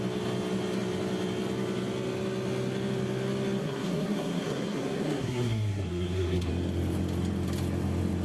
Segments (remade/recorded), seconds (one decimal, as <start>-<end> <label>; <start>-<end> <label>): 0.0-3.6 recorded; 3.6-6.5 remade; 6.5-8.2 recorded